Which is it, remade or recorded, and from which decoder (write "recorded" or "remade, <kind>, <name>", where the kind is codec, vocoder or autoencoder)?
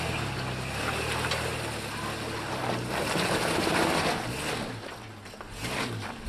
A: recorded